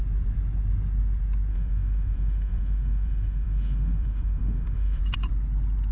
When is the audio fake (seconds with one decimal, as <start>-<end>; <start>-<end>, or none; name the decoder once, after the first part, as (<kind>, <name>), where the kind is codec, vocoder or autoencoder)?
1.5-5.0 (autoencoder, DAC-VAE)